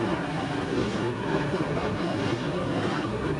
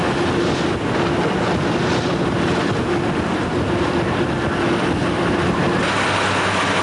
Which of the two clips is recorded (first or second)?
second